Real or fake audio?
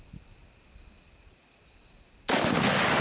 real